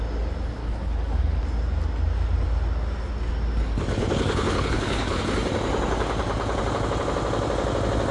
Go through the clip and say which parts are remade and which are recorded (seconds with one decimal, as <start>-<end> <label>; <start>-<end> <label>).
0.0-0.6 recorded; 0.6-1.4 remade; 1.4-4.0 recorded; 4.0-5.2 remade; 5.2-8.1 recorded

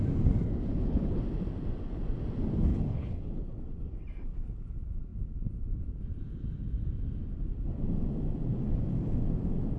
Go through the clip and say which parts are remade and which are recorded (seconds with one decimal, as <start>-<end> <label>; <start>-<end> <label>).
0.0-0.7 recorded; 0.7-1.2 remade; 1.2-2.7 recorded; 2.7-3.4 remade; 3.4-9.8 recorded

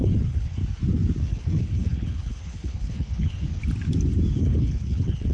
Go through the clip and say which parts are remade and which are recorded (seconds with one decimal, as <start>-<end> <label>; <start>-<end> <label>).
0.0-0.6 remade; 0.6-1.2 recorded; 1.2-3.6 remade; 3.6-4.4 recorded; 4.4-5.3 remade

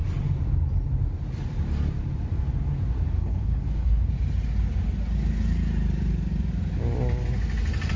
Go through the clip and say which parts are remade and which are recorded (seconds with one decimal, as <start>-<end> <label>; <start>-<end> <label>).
0.0-3.2 recorded; 3.2-4.1 remade; 4.1-8.0 recorded

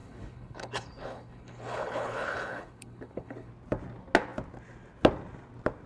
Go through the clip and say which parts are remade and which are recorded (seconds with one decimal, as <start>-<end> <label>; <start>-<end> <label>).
0.0-3.5 remade; 3.5-5.9 recorded